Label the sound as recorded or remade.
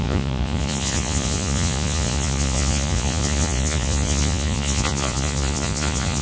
remade